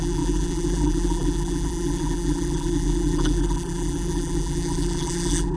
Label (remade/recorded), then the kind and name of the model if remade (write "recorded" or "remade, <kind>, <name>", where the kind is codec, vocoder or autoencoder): remade, vocoder, BigVGAN v2